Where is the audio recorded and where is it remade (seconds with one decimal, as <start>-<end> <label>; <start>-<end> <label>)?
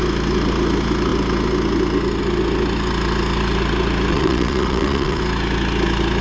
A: 0.0-4.1 recorded; 4.1-5.2 remade; 5.2-6.2 recorded